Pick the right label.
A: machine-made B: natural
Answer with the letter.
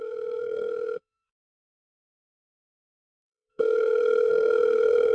A